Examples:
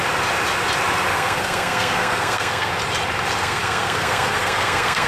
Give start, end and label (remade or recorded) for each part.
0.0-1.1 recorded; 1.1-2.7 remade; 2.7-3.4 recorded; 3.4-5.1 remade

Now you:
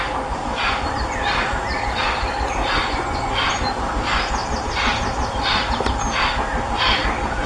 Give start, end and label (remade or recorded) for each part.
0.0-2.8 recorded; 2.8-3.3 remade; 3.3-7.5 recorded